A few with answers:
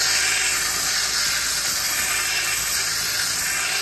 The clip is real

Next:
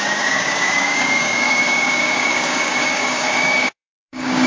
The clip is fake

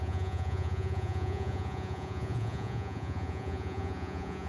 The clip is fake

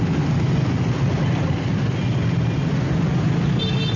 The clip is real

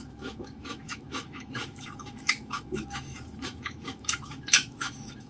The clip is fake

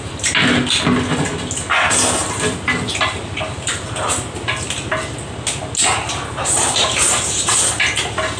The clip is real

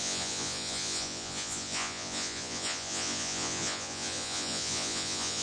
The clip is fake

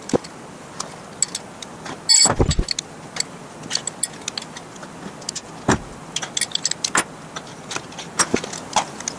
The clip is real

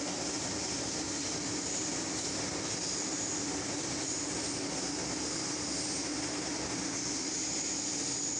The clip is real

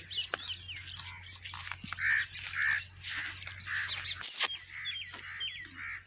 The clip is real